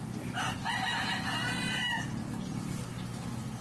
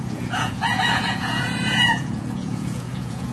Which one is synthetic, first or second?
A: second